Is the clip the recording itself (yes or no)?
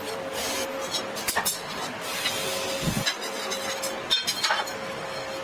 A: yes